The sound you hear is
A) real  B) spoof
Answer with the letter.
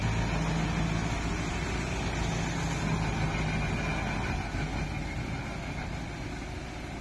A